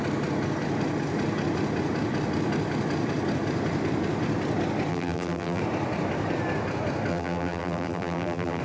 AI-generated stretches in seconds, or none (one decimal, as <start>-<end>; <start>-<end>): 4.9-5.6; 7.1-8.6